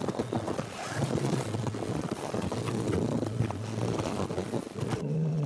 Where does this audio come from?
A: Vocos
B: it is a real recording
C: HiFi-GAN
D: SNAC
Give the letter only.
A